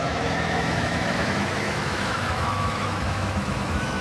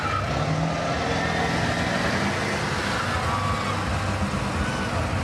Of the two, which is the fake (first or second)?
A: first